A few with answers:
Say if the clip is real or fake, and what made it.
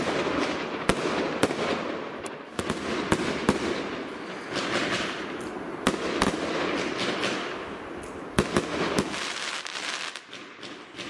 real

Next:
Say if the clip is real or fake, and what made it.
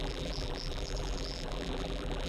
fake, vocoder, BigVGAN v2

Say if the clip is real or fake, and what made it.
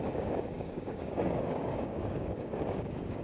fake, codec, DAC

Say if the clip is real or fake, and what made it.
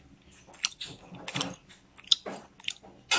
real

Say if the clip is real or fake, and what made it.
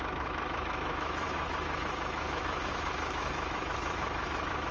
fake, autoencoder, DAC-VAE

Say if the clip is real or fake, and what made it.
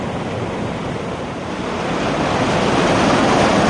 real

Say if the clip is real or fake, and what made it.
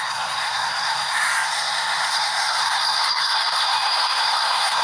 fake, codec, SNAC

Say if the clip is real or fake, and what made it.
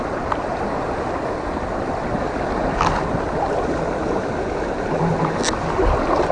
real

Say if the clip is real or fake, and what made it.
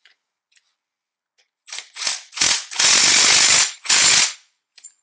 fake, vocoder, Vocos